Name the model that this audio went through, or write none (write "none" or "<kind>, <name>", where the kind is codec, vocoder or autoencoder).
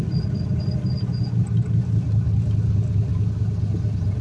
none